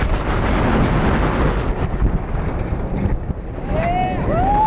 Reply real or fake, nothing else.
real